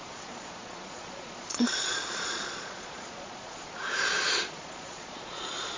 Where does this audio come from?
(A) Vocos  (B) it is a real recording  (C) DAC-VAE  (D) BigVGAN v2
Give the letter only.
A